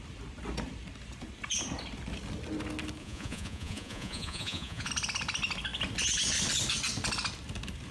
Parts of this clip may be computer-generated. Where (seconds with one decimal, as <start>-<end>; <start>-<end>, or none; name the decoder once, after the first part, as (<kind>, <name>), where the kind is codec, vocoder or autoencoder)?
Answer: 3.0-4.9 (vocoder, Vocos)